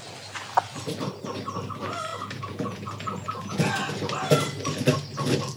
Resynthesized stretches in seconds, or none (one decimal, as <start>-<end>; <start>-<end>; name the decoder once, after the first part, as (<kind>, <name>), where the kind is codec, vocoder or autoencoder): 2.1-3.7 (vocoder, Vocos)